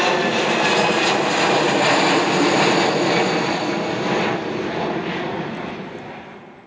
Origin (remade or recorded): recorded